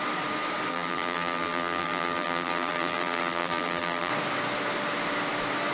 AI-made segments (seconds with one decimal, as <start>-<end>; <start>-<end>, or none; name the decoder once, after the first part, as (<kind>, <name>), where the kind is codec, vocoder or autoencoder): 0.7-4.1 (vocoder, BigVGAN v2)